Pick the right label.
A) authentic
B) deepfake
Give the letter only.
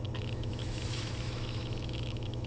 B